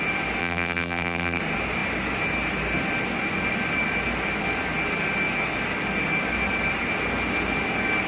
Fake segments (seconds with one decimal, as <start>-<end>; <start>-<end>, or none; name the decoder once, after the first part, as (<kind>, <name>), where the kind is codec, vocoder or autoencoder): 0.4-1.4 (vocoder, BigVGAN v2)